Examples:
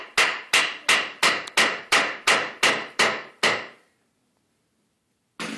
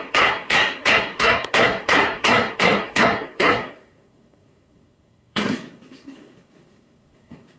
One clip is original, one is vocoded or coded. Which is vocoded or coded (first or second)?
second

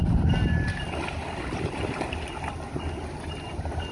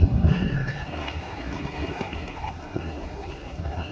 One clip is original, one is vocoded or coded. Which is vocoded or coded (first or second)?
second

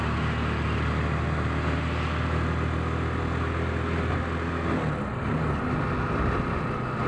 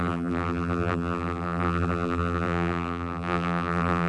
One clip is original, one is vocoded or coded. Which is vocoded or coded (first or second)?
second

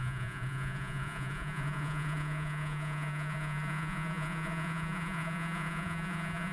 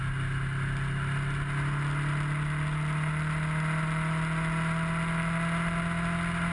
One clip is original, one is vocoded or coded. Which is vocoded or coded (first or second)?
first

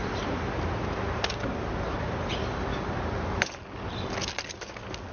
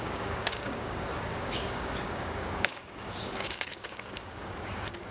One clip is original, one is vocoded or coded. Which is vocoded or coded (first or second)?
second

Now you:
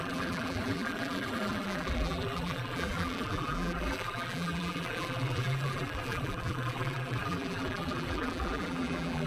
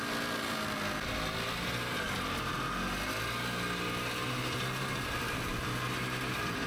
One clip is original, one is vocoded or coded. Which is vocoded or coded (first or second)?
first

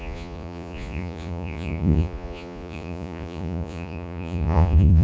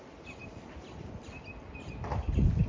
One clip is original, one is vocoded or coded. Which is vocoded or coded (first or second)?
first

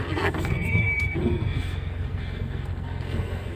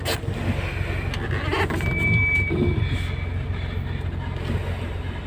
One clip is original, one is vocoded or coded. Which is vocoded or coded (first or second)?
first